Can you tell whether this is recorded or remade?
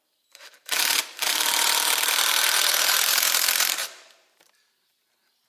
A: remade